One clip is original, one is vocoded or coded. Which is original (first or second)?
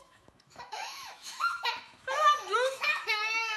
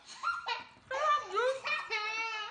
second